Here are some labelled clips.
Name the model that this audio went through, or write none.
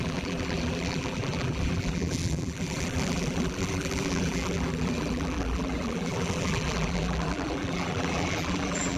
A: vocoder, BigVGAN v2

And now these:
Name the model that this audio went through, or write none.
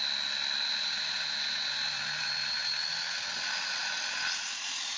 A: none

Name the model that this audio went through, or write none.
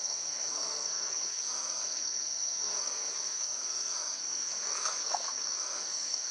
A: codec, SNAC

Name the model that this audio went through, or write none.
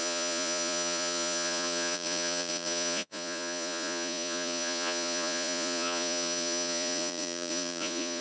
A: vocoder, Vocos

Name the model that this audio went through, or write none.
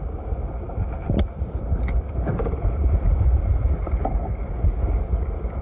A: none